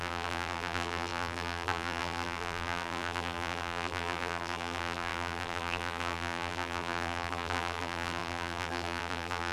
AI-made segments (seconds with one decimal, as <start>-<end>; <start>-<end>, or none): 0.0-9.5